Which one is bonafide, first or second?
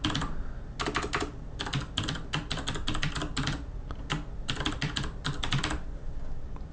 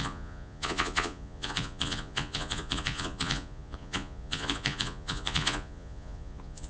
first